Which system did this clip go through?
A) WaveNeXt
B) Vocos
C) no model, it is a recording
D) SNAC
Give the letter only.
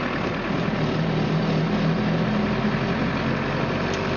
C